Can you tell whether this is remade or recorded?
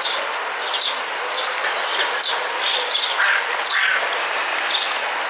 recorded